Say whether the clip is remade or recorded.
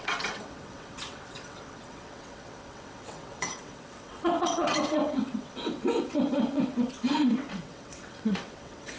remade